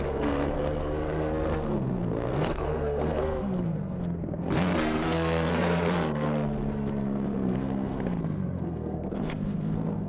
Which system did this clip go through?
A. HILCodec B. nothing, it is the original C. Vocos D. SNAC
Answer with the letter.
D